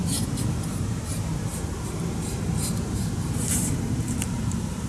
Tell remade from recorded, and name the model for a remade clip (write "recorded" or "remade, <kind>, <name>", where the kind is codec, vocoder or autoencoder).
remade, vocoder, BigVGAN v2